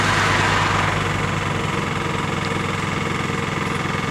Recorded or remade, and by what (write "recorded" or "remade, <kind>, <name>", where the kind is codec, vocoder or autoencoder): recorded